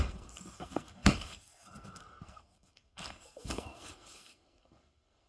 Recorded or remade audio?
remade